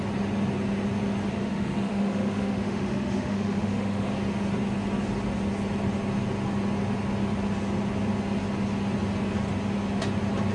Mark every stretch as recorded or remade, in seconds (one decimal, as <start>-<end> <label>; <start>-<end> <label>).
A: 0.0-1.3 recorded; 1.3-4.1 remade; 4.1-10.5 recorded